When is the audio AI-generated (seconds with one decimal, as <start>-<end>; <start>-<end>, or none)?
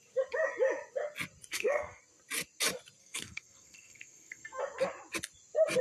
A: 1.5-2.0; 3.0-4.6